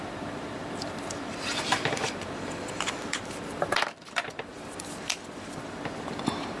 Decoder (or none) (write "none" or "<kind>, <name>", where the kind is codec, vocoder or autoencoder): vocoder, BigVGAN v2